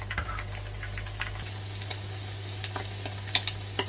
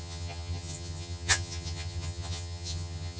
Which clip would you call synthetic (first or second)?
second